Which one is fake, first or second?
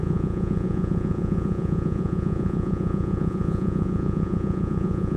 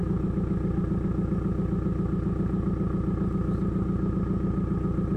first